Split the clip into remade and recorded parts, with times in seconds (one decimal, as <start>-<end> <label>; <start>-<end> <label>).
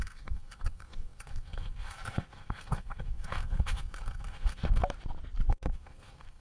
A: 0.0-4.8 remade; 4.8-5.5 recorded; 5.5-6.4 remade